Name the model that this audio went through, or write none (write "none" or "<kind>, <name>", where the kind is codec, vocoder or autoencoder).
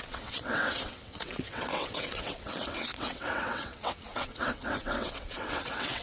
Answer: vocoder, WaveNeXt